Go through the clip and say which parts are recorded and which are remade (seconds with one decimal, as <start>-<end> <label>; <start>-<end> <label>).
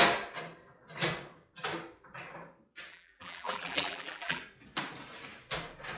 0.0-2.9 recorded; 2.9-4.4 remade; 4.4-6.0 recorded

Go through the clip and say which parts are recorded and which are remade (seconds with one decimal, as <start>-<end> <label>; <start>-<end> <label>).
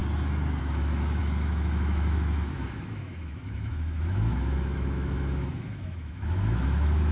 0.0-0.6 recorded; 0.6-7.1 remade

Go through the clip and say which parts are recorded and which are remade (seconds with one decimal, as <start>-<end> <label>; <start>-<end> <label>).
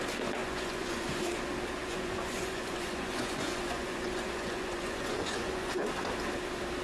0.0-0.4 recorded; 0.4-1.2 remade; 1.2-1.8 recorded; 1.8-5.7 remade; 5.7-6.8 recorded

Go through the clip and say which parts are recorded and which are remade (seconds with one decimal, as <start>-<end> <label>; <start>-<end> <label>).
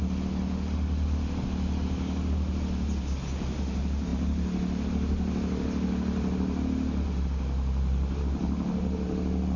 0.0-9.6 recorded